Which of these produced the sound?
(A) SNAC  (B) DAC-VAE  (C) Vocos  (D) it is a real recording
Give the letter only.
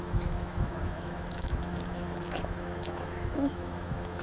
B